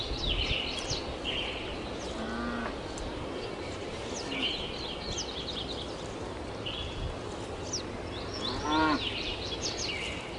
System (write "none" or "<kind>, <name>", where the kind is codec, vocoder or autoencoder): none